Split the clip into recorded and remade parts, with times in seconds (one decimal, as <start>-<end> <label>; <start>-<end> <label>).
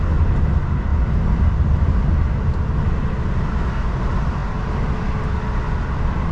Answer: 0.0-6.3 recorded